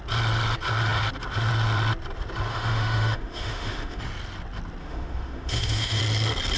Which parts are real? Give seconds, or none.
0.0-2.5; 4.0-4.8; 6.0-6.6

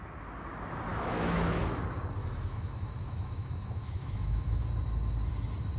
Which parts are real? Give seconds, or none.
0.0-0.9; 1.6-2.2; 4.7-5.8

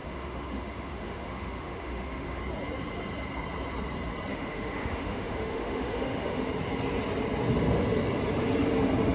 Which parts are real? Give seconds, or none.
2.4-4.3; 6.5-9.1

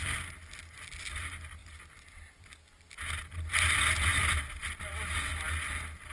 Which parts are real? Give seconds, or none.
0.0-6.1